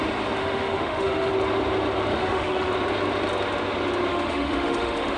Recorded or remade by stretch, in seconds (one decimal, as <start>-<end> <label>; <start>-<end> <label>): 0.0-0.4 recorded; 0.4-1.3 remade; 1.3-2.1 recorded; 2.1-2.7 remade; 2.7-4.1 recorded; 4.1-5.2 remade